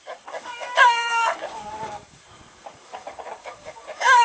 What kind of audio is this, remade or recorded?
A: remade